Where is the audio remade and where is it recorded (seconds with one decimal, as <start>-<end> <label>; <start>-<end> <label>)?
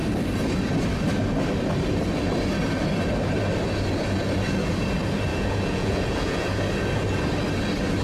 0.0-5.3 recorded; 5.3-6.6 remade; 6.6-8.0 recorded